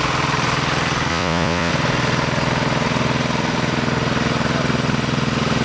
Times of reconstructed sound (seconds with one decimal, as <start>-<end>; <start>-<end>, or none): 1.1-1.7